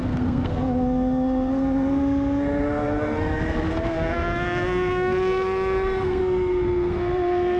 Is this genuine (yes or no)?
no